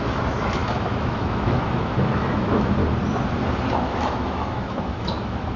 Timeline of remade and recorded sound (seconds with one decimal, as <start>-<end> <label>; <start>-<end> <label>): 0.0-2.8 remade; 2.8-3.7 recorded; 3.7-5.6 remade